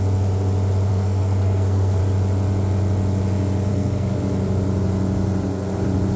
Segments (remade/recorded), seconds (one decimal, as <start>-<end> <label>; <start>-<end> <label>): 0.0-0.9 recorded; 0.9-2.0 remade; 2.0-3.7 recorded; 3.7-4.2 remade; 4.2-6.2 recorded